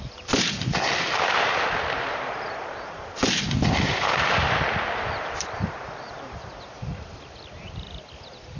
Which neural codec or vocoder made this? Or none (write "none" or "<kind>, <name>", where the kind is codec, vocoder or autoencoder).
vocoder, BigVGAN v2